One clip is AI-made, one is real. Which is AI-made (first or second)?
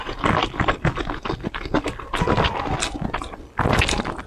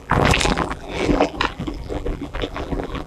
second